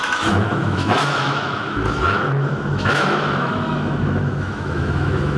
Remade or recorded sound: remade